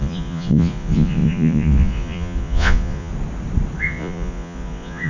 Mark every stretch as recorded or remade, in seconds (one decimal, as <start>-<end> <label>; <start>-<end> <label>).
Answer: 0.0-3.1 remade; 3.1-3.8 recorded; 3.8-5.1 remade